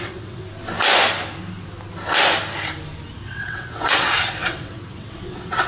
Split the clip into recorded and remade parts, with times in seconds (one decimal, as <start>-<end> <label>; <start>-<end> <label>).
0.0-0.4 remade; 0.4-3.2 recorded; 3.2-5.7 remade